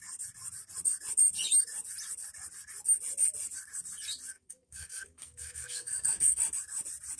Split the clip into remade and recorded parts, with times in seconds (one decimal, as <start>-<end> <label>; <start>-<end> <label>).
0.0-4.3 recorded; 4.3-6.4 remade; 6.4-7.2 recorded